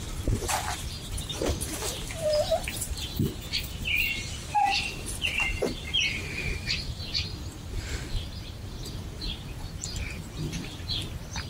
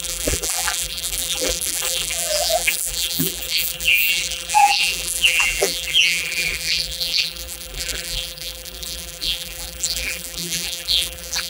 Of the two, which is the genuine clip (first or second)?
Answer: first